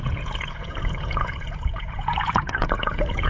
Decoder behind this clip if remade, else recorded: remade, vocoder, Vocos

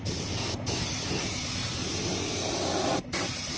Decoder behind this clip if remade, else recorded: recorded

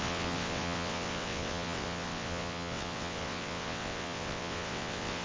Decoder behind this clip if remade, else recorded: remade, vocoder, WaveNeXt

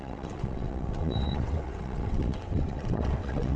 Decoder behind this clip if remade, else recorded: remade, vocoder, WaveNeXt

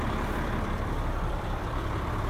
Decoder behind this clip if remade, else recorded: remade, vocoder, BigVGAN v2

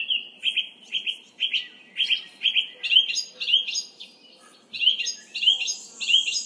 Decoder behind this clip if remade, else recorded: recorded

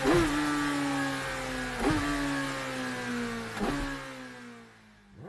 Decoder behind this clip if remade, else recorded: recorded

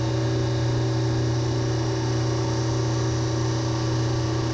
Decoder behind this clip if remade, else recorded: recorded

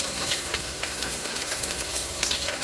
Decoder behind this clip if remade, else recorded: remade, codec, SNAC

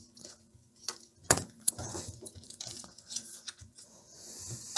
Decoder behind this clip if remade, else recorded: remade, vocoder, Vocos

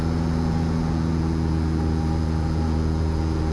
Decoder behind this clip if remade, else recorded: remade, vocoder, Vocos